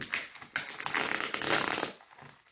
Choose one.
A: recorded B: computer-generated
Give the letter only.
A